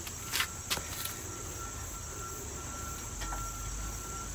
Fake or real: real